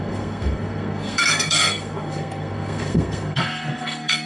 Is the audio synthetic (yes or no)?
yes